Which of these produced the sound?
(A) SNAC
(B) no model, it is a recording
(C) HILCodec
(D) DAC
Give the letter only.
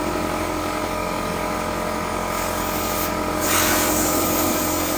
D